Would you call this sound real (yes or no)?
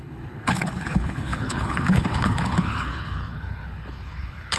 no